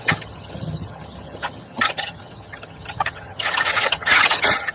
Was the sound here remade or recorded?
remade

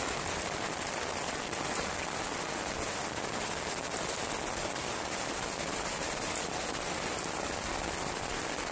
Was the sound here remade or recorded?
recorded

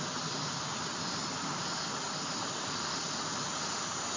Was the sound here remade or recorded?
recorded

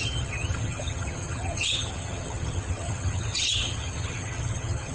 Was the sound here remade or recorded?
remade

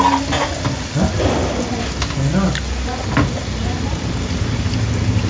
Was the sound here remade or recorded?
recorded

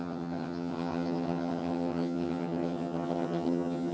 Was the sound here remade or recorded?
remade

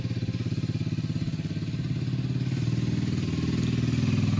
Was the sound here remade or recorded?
recorded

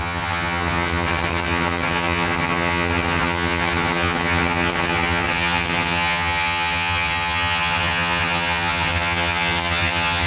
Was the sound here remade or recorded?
remade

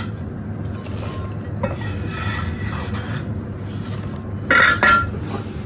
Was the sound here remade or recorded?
recorded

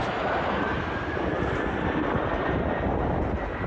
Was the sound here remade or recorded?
recorded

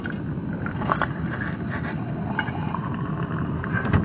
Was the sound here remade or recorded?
recorded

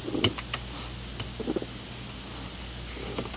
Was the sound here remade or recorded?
recorded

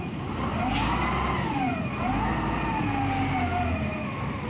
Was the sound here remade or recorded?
recorded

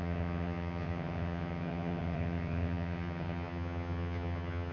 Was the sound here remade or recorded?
remade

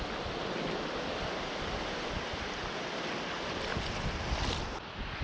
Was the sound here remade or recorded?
recorded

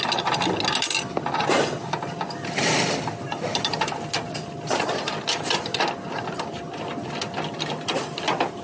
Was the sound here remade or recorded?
recorded